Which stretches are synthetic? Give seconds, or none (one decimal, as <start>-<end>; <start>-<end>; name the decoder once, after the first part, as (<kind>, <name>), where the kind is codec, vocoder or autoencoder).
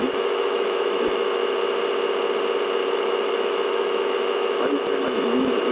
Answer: 0.0-1.4 (autoencoder, DAC-VAE); 2.8-5.7